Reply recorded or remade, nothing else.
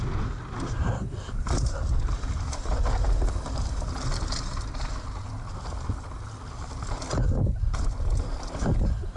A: recorded